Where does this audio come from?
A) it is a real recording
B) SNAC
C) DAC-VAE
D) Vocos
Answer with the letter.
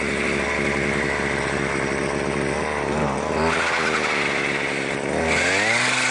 A